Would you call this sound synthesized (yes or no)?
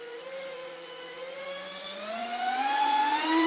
yes